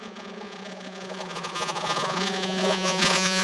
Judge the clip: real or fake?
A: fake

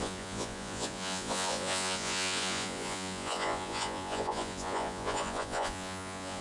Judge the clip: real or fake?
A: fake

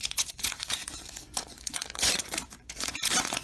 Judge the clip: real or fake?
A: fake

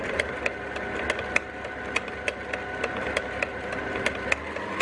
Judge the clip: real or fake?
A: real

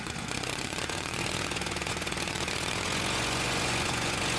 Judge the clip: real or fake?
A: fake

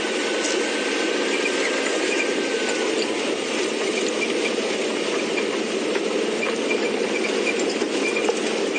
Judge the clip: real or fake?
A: real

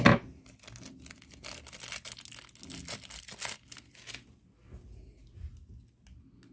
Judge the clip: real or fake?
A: real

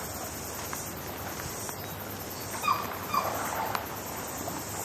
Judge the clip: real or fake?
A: real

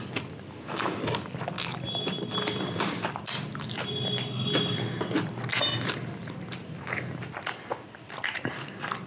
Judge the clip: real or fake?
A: real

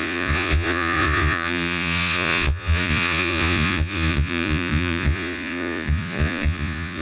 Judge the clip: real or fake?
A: fake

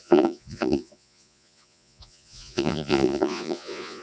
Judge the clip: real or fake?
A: fake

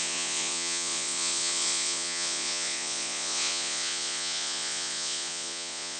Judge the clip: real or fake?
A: fake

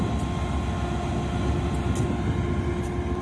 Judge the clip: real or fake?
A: real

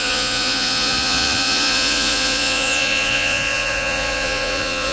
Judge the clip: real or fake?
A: fake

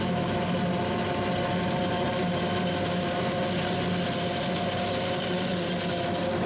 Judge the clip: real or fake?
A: real